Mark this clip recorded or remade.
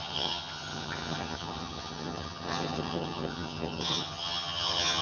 remade